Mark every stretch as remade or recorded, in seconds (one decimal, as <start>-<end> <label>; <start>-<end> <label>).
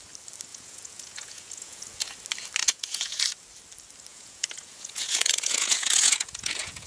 0.0-0.5 recorded; 0.5-2.1 remade; 2.1-2.6 recorded; 2.6-3.2 remade; 3.2-4.1 recorded; 4.1-6.9 remade